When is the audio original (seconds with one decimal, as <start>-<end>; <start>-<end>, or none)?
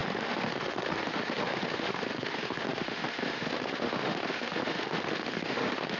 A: none